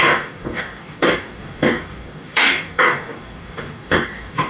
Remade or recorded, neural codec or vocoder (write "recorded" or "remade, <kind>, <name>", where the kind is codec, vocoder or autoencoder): remade, codec, DAC